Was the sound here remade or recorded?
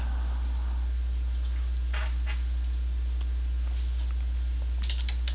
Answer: recorded